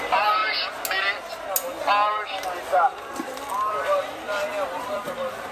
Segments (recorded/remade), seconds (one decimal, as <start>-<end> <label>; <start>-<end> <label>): 0.0-0.4 remade; 0.4-3.7 recorded; 3.7-5.5 remade